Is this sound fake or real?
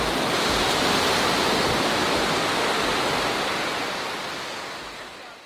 real